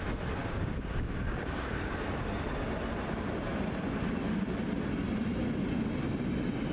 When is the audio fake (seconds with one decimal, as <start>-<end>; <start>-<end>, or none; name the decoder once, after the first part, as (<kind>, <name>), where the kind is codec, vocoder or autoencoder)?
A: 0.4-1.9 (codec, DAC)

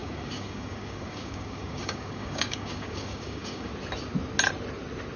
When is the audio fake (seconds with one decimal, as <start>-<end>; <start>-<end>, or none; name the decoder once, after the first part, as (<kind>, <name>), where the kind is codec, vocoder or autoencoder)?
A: 0.0-3.7 (codec, DAC)

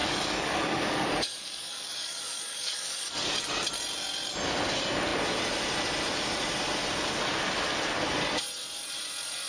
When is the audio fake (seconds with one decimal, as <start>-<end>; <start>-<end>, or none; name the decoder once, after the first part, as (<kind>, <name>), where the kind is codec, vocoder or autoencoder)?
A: 0.0-3.2 (codec, DAC)

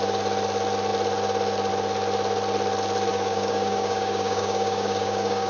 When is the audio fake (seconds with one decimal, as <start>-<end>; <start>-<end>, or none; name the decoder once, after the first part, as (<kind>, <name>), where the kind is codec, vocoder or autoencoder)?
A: 3.1-5.5 (codec, DAC)

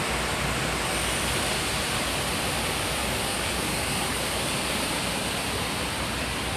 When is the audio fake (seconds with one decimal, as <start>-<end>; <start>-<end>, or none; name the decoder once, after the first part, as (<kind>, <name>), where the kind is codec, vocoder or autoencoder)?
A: 3.0-4.9 (codec, DAC)

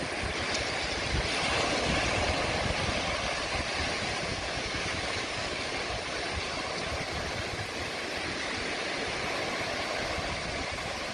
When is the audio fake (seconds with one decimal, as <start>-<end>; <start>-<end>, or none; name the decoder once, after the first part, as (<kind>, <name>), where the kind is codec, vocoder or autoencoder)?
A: 4.3-5.7 (codec, DAC)

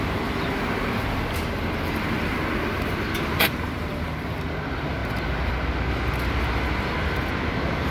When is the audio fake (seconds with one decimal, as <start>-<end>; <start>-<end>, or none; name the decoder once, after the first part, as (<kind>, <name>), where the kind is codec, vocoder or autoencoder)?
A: none